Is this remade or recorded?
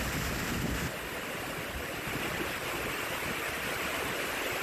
recorded